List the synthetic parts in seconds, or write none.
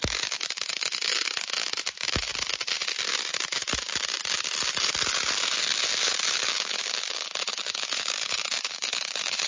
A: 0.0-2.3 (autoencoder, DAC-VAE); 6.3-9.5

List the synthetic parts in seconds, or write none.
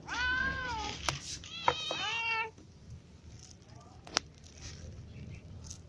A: 0.4-1.0 (codec, SNAC)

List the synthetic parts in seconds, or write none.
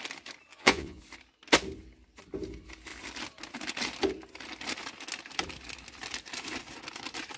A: 0.5-1.0 (vocoder, Vocos)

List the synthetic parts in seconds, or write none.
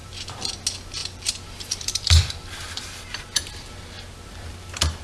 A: 1.0-3.1 (vocoder, BigVGAN v2)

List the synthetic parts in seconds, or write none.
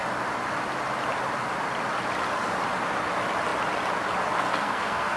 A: 4.4-5.2 (codec, SNAC)